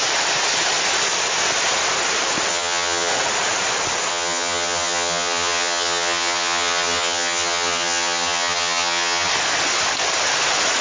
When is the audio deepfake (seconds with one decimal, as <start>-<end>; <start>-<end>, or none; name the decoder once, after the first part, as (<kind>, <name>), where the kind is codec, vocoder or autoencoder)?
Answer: 2.5-3.1 (vocoder, HiFi-GAN); 4.1-9.3

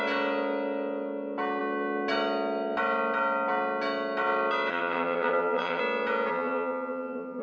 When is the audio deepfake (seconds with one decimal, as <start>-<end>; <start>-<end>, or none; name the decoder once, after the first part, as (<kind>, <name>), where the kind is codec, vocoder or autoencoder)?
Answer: 4.7-5.8 (vocoder, HiFi-GAN); 6.3-7.4

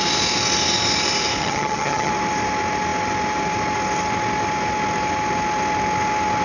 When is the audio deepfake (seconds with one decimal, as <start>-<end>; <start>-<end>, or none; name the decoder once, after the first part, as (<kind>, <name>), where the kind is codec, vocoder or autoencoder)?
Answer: 1.4-2.1 (vocoder, HiFi-GAN)

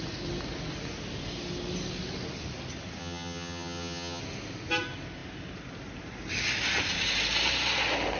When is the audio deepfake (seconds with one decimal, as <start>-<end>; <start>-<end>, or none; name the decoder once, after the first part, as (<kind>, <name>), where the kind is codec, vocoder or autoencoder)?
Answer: 3.0-4.2 (vocoder, HiFi-GAN)

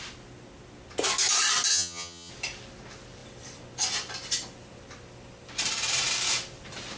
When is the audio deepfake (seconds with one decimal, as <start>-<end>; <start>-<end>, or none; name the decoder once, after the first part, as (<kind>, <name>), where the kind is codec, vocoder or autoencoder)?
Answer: 1.7-2.3 (vocoder, HiFi-GAN)

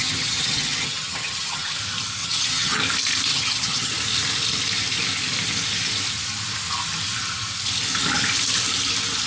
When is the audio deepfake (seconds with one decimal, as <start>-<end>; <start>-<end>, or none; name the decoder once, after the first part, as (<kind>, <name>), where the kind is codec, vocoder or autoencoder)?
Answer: 0.0-1.8 (vocoder, HiFi-GAN); 2.2-2.8; 3.3-3.9